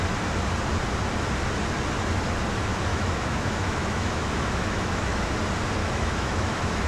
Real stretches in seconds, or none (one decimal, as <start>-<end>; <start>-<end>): 0.0-2.9; 5.3-5.8